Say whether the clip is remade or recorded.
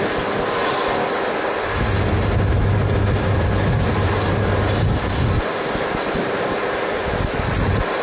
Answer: recorded